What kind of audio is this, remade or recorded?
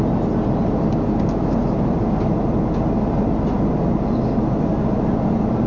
recorded